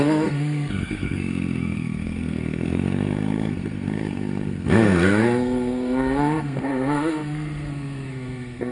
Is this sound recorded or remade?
remade